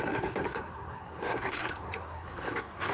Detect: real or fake fake